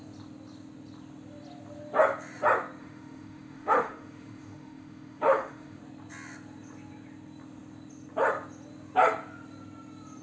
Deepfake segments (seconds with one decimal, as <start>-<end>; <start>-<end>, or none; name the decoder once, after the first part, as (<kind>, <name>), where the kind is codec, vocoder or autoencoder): 2.8-5.8 (autoencoder, DAC-VAE)